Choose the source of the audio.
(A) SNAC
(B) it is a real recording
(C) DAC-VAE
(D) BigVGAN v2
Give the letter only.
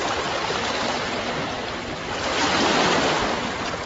B